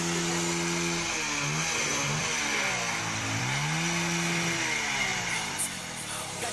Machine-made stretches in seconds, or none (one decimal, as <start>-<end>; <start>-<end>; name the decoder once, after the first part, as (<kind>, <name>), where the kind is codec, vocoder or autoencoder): 1.9-3.4 (vocoder, BigVGAN v2); 5.1-6.5